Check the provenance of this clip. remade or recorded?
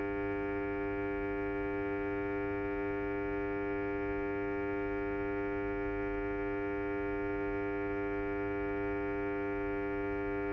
recorded